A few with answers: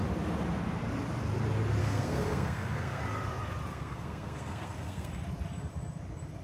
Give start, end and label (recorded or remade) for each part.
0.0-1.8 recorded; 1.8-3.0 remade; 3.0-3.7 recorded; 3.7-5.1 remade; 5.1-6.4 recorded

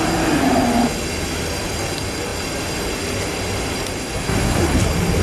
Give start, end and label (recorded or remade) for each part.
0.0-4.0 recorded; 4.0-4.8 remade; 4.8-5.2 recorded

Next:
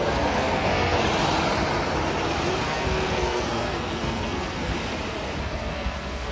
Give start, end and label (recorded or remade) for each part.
0.0-1.0 remade; 1.0-2.5 recorded; 2.5-4.7 remade; 4.7-5.4 recorded; 5.4-6.3 remade

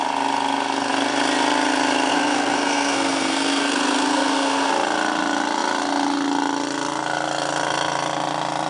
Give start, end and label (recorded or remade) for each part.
0.0-2.1 recorded; 2.1-4.7 remade; 4.7-8.7 recorded